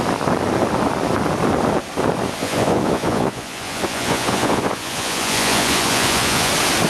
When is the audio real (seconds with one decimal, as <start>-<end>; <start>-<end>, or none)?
0.0-2.4; 6.5-6.9